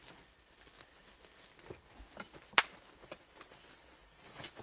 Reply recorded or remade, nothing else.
recorded